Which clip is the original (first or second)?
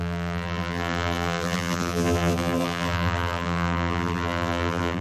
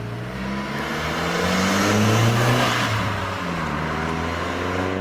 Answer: second